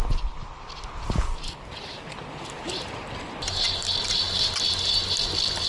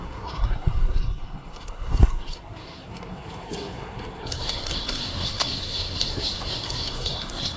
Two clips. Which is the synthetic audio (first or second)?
second